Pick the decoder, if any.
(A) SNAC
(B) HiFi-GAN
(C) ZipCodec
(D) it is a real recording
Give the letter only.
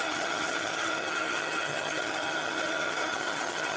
B